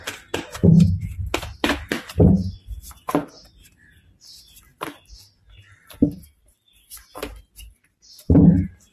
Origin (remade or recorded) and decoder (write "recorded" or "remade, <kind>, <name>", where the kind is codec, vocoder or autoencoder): recorded